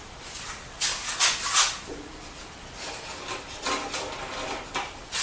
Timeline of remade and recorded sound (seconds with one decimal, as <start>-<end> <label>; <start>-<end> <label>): 0.0-5.2 recorded